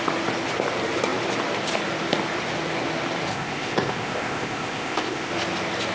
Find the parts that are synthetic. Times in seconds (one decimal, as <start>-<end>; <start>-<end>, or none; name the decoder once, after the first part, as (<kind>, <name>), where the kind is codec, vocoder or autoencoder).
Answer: 3.3-5.3 (codec, ZipCodec)